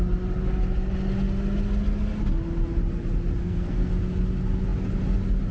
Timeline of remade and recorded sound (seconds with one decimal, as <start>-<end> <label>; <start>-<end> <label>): 0.0-3.4 recorded; 3.4-3.9 remade; 3.9-5.5 recorded